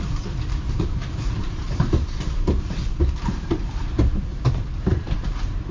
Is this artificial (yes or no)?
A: yes